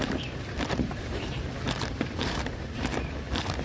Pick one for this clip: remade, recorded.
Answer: remade